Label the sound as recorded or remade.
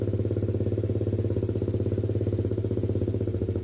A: recorded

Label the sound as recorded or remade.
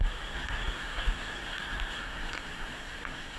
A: remade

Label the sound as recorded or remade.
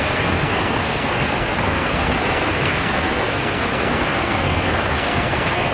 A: remade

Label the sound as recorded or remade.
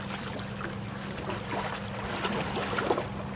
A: recorded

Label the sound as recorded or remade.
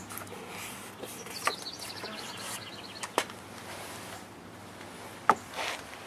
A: recorded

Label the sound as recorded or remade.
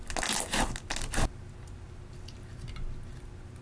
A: recorded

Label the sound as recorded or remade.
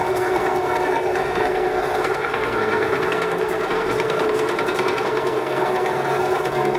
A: remade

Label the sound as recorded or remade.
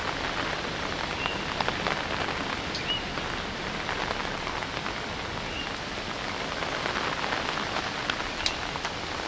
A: recorded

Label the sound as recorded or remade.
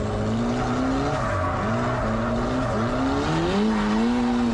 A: recorded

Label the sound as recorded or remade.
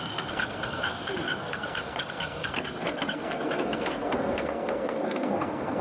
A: remade